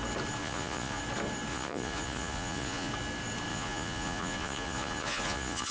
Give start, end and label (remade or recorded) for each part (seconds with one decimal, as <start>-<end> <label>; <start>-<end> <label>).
0.0-0.4 recorded; 0.4-1.0 remade; 1.0-1.5 recorded; 1.5-2.9 remade; 2.9-3.5 recorded; 3.5-5.7 remade